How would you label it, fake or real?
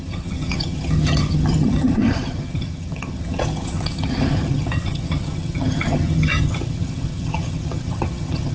fake